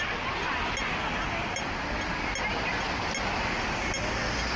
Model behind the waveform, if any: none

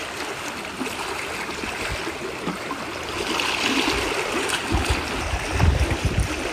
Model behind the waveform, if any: none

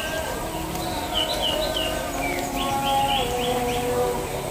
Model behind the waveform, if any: none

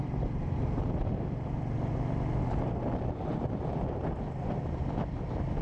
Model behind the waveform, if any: none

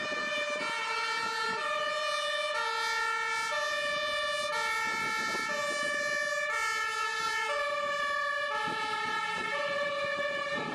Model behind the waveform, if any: none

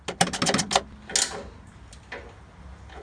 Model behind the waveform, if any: none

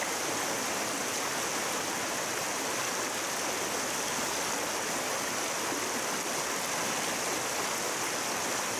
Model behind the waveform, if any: none